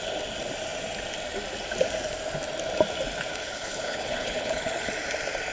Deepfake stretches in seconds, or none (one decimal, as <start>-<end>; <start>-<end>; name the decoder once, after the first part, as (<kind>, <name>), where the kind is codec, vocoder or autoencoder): 3.3-4.9 (codec, HILCodec)